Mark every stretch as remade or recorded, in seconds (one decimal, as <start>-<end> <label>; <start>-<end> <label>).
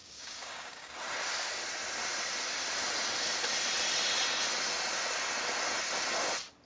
0.0-0.9 remade; 0.9-6.7 recorded